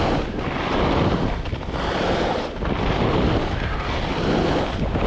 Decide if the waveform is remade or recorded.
recorded